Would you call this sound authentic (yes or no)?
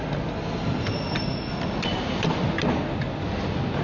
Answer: yes